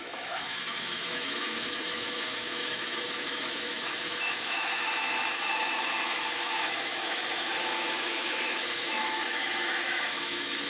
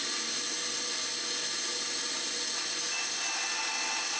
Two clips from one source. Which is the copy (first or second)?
first